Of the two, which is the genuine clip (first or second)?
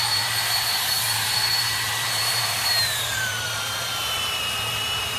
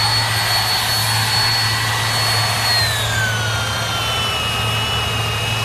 second